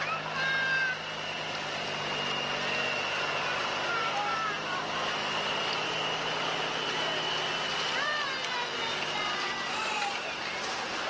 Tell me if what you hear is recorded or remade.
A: recorded